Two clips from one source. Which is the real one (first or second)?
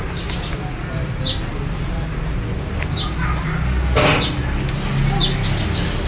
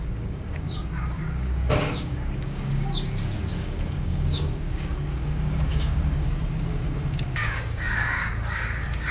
first